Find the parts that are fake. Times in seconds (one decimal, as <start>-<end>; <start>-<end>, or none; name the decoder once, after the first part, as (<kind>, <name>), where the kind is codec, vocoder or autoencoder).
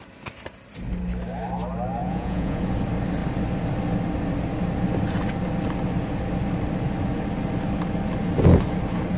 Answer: 2.0-2.6 (vocoder, Vocos)